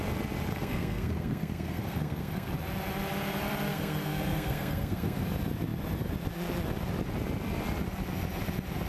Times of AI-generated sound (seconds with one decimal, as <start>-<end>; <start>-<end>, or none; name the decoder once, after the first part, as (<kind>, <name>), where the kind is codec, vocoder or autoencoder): 0.5-2.5 (codec, SNAC); 3.7-5.2